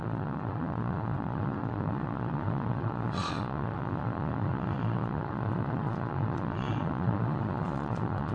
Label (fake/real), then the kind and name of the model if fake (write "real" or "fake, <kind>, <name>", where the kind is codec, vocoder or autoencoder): fake, vocoder, Vocos